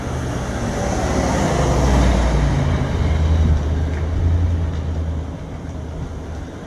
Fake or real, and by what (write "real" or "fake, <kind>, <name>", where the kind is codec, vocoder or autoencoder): real